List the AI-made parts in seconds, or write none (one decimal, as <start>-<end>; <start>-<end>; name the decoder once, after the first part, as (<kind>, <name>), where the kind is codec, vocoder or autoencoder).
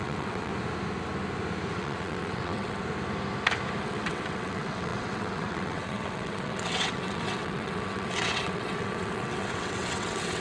0.0-0.5 (vocoder, WaveNeXt); 1.7-2.8; 3.8-10.4